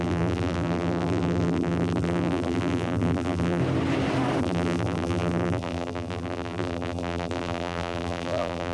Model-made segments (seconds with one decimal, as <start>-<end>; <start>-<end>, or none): 0.0-3.6; 4.4-8.7